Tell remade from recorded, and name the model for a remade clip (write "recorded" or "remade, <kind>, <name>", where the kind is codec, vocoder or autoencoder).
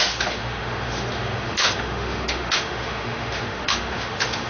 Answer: remade, autoencoder, DAC-VAE